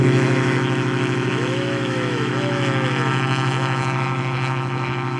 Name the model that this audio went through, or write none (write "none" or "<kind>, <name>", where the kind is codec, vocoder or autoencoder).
autoencoder, DAC-VAE